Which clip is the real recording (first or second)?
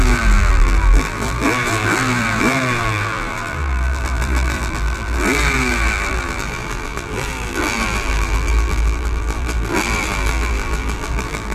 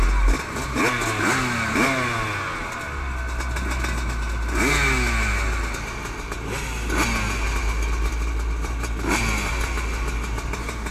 second